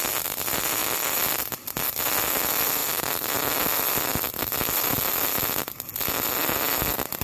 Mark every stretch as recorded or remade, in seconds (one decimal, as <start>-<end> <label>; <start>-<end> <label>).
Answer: 0.0-7.2 recorded

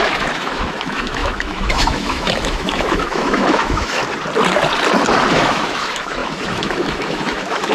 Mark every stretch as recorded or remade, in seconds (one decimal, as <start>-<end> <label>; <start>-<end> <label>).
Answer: 0.0-4.0 remade; 4.0-5.3 recorded; 5.3-7.7 remade

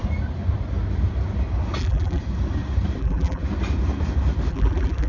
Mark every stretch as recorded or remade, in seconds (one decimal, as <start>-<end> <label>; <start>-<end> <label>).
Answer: 0.0-1.8 recorded; 1.8-2.2 remade; 2.2-3.0 recorded; 3.0-3.4 remade; 3.4-4.5 recorded; 4.5-5.1 remade

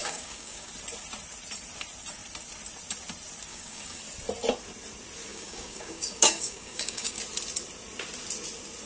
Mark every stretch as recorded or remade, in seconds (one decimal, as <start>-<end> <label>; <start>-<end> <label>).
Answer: 0.0-0.7 remade; 0.7-3.5 recorded; 3.5-4.0 remade; 4.0-5.3 recorded; 5.3-7.2 remade; 7.2-8.9 recorded

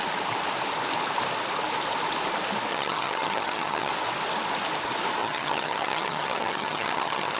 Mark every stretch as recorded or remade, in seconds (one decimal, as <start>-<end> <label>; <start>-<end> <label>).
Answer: 0.0-2.7 recorded; 2.7-3.9 remade; 3.9-5.2 recorded; 5.2-7.4 remade

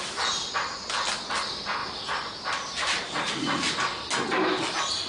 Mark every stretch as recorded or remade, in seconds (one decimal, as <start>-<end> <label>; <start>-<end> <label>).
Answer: 0.0-1.8 recorded; 1.8-3.7 remade; 3.7-5.1 recorded

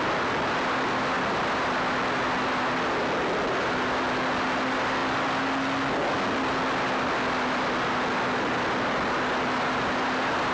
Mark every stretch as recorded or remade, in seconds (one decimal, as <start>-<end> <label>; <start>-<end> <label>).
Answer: 0.0-10.5 recorded

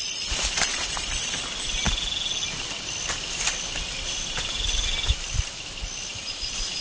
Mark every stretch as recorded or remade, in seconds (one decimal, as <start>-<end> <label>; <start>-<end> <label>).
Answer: 0.0-6.8 recorded